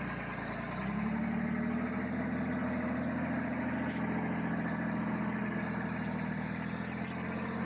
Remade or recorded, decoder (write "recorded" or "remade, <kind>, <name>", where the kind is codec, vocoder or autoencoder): recorded